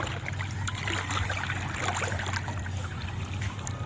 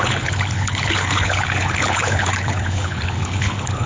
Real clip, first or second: first